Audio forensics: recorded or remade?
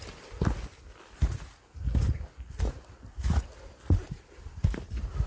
recorded